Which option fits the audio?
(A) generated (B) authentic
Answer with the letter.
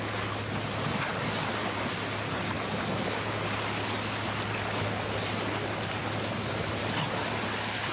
B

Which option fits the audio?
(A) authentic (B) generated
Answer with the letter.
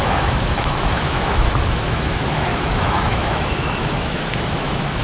B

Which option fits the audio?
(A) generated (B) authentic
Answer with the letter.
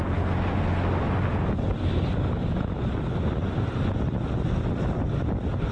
B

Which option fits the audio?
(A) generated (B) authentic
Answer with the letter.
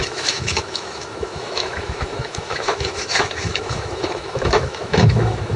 A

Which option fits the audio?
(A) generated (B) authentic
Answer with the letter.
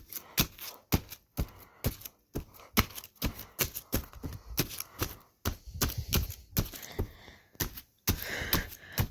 B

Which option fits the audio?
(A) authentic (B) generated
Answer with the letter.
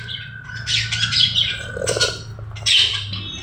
A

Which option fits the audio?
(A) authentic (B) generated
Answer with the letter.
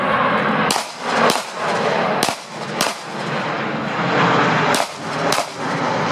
A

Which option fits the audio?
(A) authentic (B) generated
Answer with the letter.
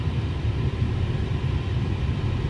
A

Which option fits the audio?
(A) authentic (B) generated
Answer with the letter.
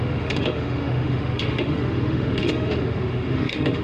B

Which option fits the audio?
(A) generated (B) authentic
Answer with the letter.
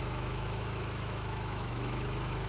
A